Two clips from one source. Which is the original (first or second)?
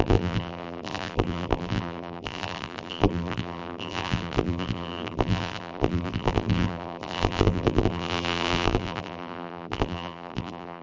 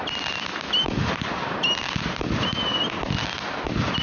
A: second